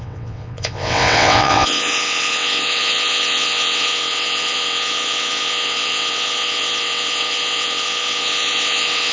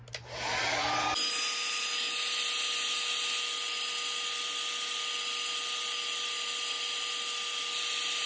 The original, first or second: second